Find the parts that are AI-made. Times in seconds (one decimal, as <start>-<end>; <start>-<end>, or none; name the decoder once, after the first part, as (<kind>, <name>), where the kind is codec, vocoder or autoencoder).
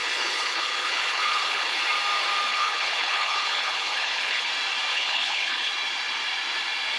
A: 0.0-1.8 (codec, HILCodec); 2.5-4.5; 4.9-5.7